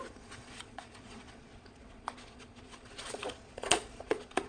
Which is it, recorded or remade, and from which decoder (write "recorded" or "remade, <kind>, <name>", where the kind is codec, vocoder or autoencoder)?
remade, vocoder, Vocos